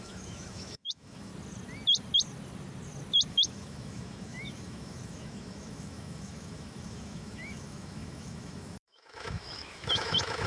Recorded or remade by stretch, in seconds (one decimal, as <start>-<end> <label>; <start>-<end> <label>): 0.0-1.3 remade; 1.3-3.3 recorded; 3.3-10.5 remade